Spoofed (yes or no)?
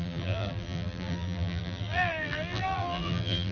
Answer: yes